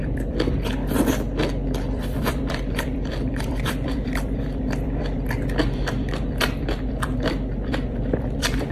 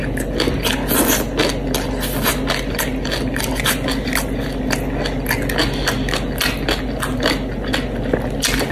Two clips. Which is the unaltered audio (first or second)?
second